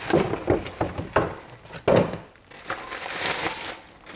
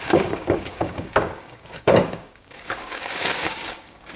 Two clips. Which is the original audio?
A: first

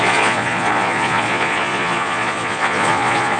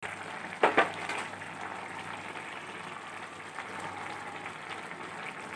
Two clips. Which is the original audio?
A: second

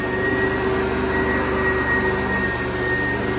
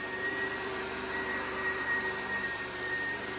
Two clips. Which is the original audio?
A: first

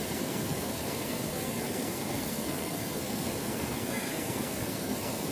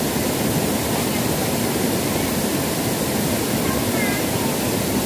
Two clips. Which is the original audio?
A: second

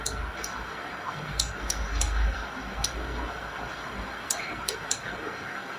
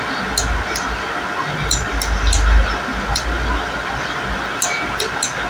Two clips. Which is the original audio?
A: second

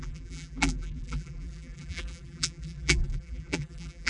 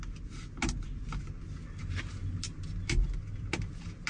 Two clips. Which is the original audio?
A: second